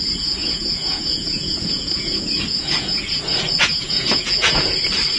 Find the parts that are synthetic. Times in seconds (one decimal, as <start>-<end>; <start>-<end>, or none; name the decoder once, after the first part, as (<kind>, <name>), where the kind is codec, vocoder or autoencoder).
0.4-3.2 (vocoder, Vocos); 3.6-4.7